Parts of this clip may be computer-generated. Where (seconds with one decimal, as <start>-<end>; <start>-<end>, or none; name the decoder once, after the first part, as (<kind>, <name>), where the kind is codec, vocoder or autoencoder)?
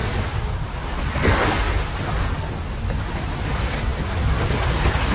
none